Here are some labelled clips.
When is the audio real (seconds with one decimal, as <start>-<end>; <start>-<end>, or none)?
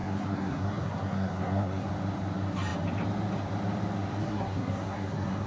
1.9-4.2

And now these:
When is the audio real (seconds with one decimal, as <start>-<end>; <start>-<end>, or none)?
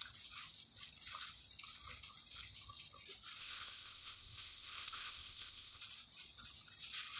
0.0-3.4; 5.8-7.2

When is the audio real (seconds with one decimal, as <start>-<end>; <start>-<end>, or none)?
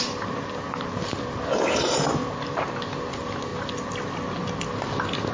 0.0-5.3